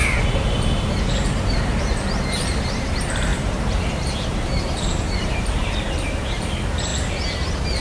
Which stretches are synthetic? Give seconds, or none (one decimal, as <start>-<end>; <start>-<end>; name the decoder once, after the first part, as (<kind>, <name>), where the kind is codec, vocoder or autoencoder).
0.0-6.9 (vocoder, BigVGAN v2)